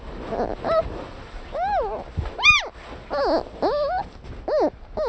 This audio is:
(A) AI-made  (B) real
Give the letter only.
B